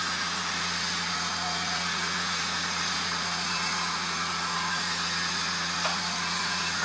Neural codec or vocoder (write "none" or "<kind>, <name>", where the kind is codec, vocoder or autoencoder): vocoder, Vocos